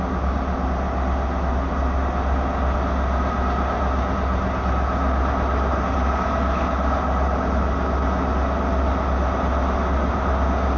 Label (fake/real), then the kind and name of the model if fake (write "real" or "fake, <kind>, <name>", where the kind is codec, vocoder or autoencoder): real